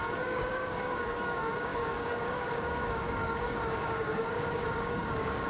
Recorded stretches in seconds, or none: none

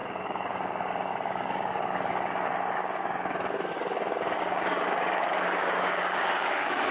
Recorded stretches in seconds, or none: none

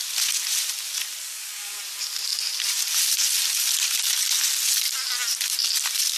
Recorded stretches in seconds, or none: 0.0-1.2; 1.8-6.2